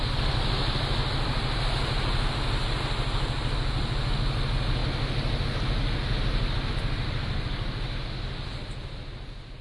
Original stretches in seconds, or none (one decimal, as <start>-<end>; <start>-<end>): 0.0-9.6